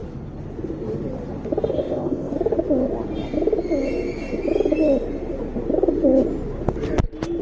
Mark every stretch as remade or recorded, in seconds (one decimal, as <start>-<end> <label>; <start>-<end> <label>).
0.0-1.7 recorded; 1.7-2.3 remade; 2.3-7.4 recorded